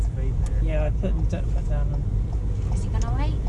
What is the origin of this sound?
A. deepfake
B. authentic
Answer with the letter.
B